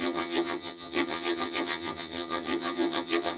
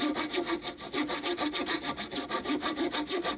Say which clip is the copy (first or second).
first